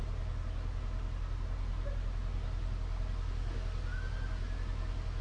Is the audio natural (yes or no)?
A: yes